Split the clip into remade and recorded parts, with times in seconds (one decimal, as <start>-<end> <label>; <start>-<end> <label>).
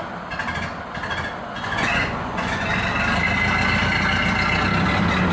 0.0-1.4 recorded; 1.4-2.7 remade; 2.7-5.3 recorded